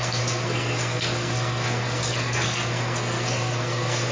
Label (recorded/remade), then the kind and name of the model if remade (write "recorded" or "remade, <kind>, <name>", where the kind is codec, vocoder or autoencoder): remade, codec, SNAC